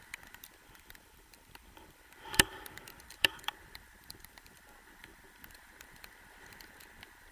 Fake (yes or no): yes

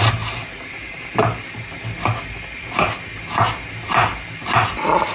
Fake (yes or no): no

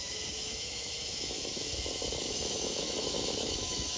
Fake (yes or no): yes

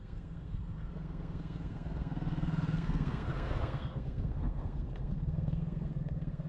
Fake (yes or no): yes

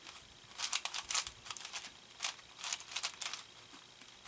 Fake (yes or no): no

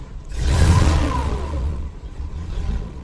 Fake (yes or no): yes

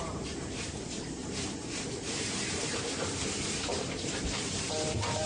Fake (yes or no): yes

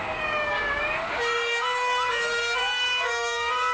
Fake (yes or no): yes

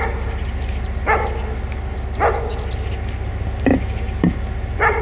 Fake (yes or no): no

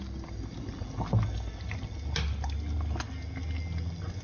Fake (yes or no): no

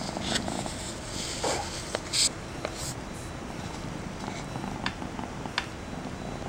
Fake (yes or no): no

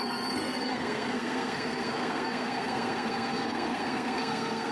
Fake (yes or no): yes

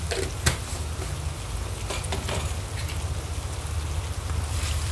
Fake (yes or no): no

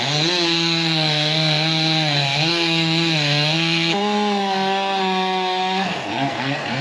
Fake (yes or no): yes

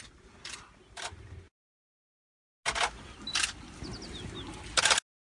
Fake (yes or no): no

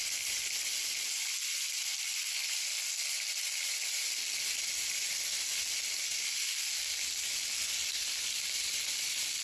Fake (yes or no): no